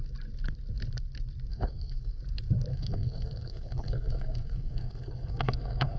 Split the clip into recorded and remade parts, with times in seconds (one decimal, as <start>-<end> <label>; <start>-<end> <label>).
0.0-1.5 recorded; 1.5-2.2 remade; 2.2-2.7 recorded; 2.7-6.0 remade

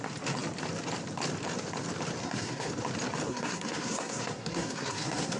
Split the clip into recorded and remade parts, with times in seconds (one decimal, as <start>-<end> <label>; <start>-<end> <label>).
0.0-2.2 recorded; 2.2-2.7 remade; 2.7-3.3 recorded; 3.3-5.4 remade

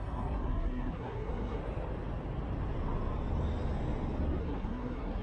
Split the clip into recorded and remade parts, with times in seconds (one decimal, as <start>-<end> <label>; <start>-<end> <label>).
0.0-1.6 remade; 1.6-4.4 recorded; 4.4-5.2 remade

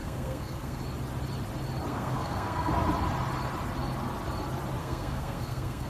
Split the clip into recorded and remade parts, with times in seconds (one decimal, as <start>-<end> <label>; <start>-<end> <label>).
0.0-0.8 remade; 0.8-1.9 recorded; 1.9-2.7 remade; 2.7-4.8 recorded; 4.8-5.9 remade

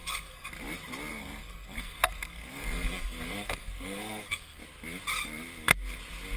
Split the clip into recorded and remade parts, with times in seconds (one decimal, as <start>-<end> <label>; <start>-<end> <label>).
0.0-0.5 remade; 0.5-1.1 recorded; 1.1-4.6 remade; 4.6-6.4 recorded